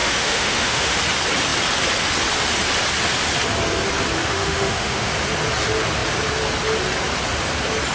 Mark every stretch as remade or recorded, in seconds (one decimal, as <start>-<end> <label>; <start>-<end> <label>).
0.0-1.0 remade; 1.0-4.2 recorded; 4.2-5.1 remade; 5.1-7.9 recorded